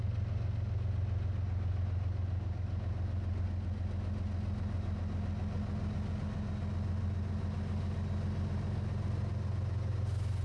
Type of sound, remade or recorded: recorded